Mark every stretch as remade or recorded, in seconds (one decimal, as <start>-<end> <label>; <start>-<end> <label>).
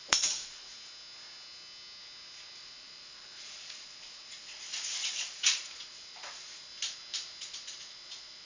0.0-0.7 remade; 0.7-2.6 recorded; 2.6-6.7 remade; 6.7-7.4 recorded; 7.4-8.5 remade